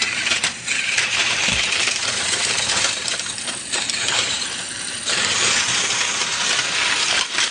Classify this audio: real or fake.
fake